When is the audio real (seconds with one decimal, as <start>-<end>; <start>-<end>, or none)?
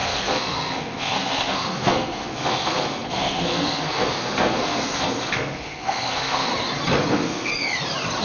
6.5-7.1; 7.5-8.2